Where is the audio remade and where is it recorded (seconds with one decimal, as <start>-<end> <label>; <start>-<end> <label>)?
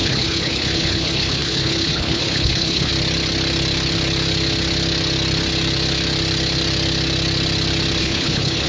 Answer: 0.0-2.9 remade; 2.9-8.0 recorded; 8.0-8.7 remade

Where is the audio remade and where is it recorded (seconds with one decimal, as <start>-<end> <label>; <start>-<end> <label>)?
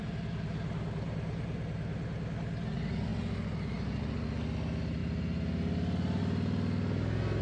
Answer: 0.0-7.4 recorded